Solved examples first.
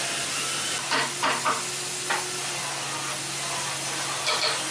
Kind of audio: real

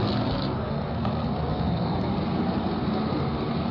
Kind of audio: fake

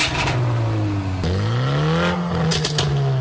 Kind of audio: real